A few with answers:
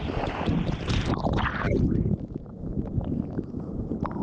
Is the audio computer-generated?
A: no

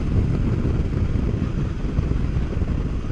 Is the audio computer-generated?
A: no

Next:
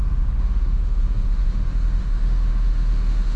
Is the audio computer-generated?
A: yes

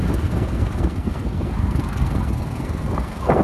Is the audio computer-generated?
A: yes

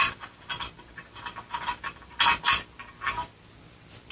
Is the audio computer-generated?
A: no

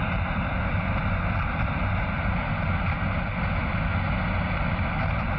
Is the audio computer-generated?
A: no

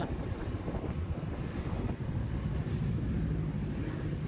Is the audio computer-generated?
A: no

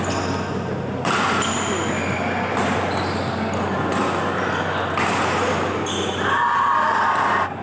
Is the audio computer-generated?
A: no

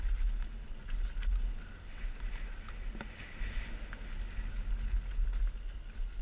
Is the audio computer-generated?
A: no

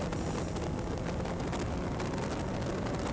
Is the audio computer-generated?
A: no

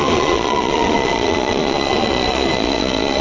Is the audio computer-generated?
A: yes